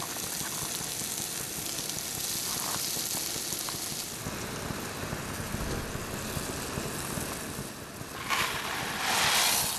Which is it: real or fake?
real